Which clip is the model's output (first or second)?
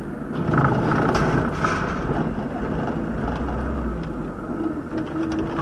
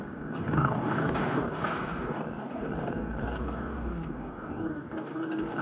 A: second